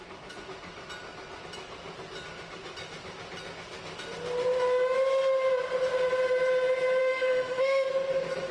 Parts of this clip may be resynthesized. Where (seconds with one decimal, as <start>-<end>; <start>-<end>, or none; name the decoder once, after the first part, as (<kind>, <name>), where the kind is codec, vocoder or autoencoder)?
7.0-7.9 (autoencoder, DAC-VAE)